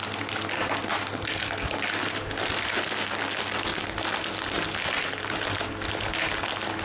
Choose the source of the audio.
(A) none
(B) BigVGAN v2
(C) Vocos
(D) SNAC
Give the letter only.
A